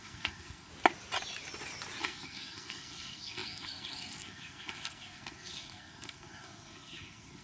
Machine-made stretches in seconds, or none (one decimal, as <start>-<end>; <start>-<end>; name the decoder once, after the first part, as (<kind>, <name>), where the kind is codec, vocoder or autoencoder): 0.0-0.7 (codec, SNAC); 2.0-7.4